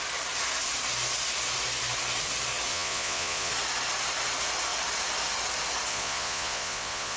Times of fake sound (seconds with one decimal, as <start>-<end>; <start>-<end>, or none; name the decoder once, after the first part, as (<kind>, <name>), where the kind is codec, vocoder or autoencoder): 2.7-3.5 (vocoder, Vocos); 5.9-7.2